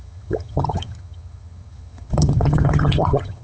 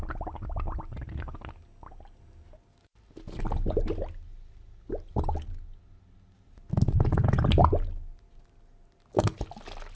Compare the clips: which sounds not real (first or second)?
first